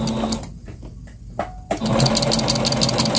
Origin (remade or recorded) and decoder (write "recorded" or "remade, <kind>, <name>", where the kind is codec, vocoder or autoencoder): recorded